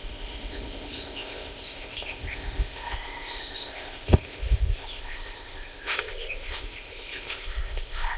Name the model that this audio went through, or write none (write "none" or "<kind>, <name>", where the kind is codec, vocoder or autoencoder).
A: codec, ZipCodec